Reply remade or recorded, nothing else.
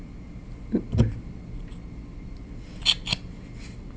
recorded